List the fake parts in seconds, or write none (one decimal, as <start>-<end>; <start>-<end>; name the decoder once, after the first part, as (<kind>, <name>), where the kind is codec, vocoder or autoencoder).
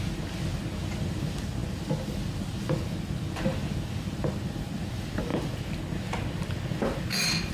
none